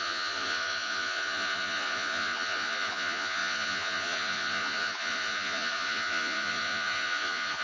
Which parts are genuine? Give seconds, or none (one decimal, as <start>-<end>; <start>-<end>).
none